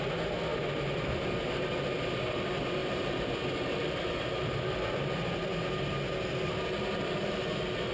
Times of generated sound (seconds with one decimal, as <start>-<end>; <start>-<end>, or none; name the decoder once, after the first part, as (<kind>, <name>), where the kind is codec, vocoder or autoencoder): 2.8-4.2 (vocoder, BigVGAN v2)